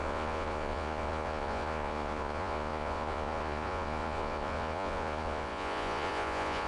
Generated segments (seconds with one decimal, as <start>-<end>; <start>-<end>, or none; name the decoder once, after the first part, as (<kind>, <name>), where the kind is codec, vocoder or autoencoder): 0.0-6.7 (vocoder, Vocos)